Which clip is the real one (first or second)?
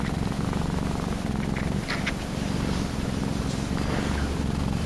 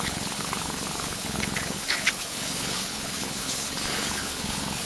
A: first